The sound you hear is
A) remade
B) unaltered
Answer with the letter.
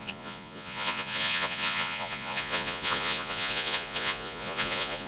A